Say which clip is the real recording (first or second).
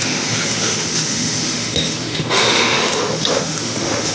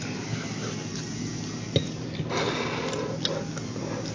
second